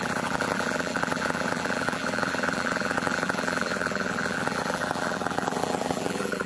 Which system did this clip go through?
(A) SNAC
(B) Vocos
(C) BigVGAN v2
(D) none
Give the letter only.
C